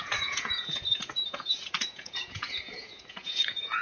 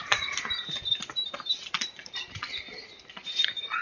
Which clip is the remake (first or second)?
first